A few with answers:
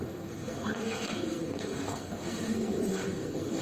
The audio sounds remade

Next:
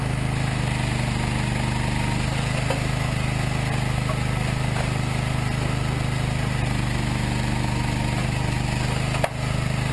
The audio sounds recorded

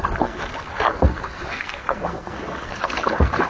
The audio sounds remade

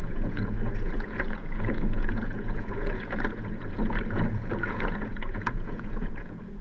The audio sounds remade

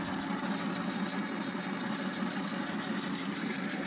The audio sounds recorded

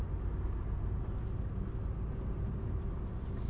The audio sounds recorded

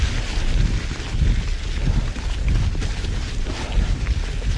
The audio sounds recorded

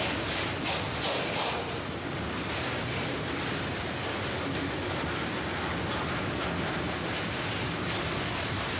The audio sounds recorded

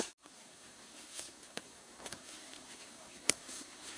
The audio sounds remade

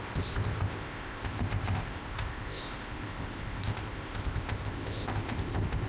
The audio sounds remade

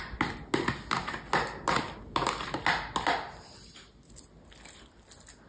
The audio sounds recorded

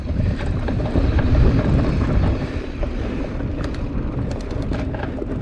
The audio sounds remade